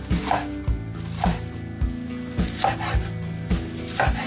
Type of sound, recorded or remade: recorded